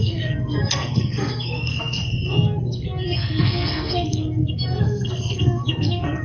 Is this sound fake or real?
fake